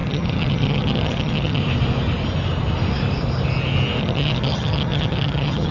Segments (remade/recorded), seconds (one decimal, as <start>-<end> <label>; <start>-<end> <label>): 0.0-1.6 remade; 1.6-4.0 recorded; 4.0-5.7 remade